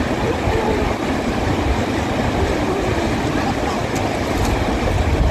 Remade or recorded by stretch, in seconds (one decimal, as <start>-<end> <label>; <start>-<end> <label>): 0.0-5.3 recorded